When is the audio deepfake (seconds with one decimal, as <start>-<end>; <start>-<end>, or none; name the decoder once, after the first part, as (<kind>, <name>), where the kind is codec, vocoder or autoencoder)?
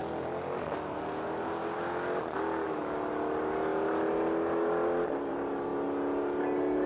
none